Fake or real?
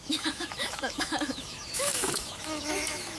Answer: fake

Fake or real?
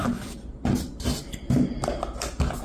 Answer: real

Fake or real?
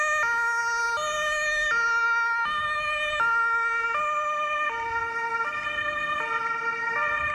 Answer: real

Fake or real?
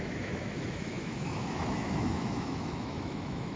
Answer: fake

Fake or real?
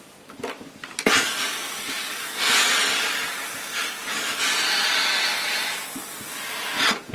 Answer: real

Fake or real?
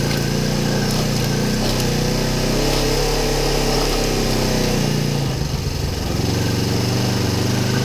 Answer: real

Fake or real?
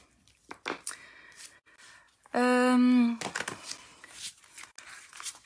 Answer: real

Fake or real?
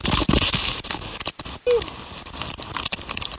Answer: real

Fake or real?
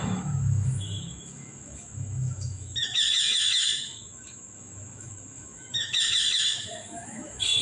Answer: fake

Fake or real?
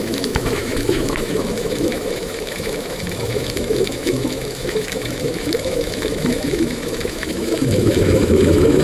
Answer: fake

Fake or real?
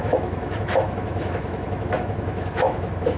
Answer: fake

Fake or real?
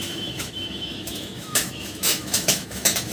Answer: fake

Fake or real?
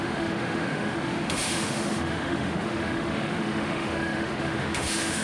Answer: fake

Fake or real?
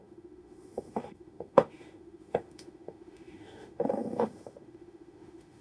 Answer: fake